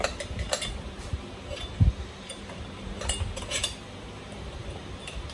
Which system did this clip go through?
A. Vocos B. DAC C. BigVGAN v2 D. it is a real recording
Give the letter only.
C